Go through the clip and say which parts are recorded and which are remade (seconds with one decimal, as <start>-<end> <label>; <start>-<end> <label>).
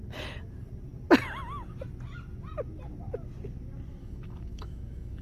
0.0-4.0 recorded; 4.0-5.2 remade